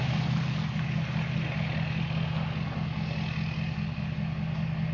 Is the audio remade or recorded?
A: recorded